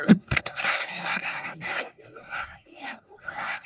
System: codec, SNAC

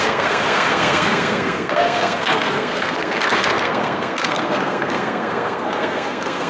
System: codec, SNAC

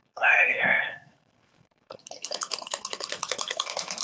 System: codec, SNAC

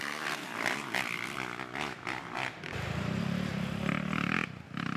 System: none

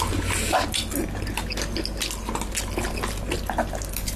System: none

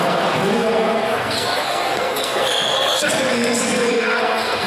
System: codec, SNAC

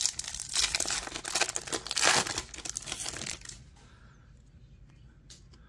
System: none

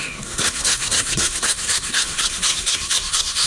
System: codec, SNAC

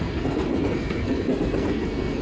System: codec, SNAC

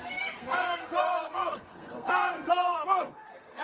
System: codec, SNAC